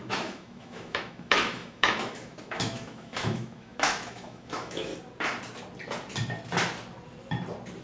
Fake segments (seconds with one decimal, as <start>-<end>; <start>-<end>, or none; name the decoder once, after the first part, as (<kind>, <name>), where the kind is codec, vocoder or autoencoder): 0.0-4.9 (autoencoder, DAC-VAE)